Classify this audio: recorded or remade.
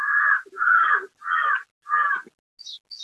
recorded